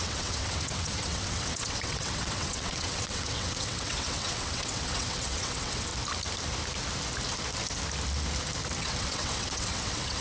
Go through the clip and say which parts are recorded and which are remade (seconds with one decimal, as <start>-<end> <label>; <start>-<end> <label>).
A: 0.0-5.9 remade; 5.9-8.8 recorded; 8.8-10.2 remade